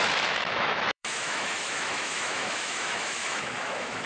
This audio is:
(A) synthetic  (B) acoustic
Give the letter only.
A